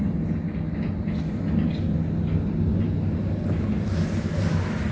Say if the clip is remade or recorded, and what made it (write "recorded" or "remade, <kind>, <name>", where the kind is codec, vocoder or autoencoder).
recorded